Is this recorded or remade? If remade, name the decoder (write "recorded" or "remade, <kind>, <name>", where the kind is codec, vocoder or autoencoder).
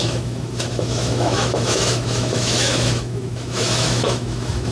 remade, autoencoder, DAC-VAE